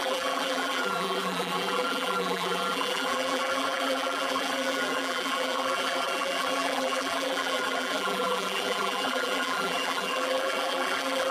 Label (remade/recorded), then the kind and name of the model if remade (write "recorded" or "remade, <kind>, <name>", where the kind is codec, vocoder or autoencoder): remade, vocoder, BigVGAN v2